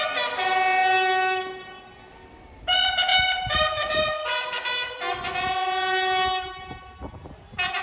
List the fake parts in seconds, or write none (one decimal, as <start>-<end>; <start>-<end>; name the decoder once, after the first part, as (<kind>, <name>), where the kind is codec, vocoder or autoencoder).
none